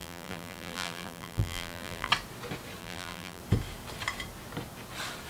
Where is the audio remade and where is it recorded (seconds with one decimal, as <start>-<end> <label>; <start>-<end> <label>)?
0.0-2.1 remade; 2.1-2.8 recorded; 2.8-3.4 remade; 3.4-5.3 recorded